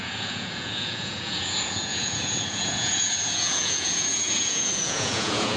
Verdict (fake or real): fake